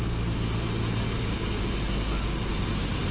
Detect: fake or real real